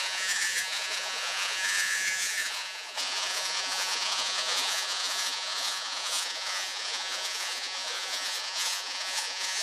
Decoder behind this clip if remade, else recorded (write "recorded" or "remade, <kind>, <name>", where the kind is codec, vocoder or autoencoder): remade, vocoder, Vocos